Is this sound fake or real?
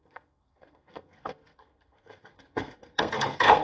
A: fake